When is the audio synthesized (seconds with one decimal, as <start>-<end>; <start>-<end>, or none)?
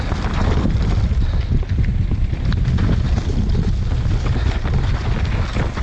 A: none